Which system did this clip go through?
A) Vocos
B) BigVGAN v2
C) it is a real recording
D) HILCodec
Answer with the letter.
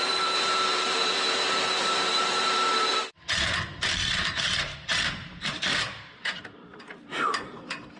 B